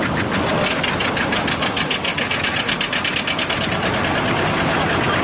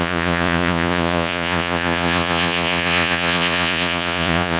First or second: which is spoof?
second